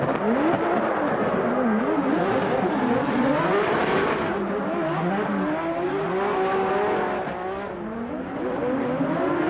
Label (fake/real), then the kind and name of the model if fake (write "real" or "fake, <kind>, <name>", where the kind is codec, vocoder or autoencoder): real